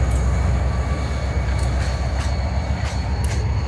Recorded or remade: recorded